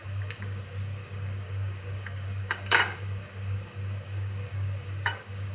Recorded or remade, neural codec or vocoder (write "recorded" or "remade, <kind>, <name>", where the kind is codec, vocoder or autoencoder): remade, codec, DAC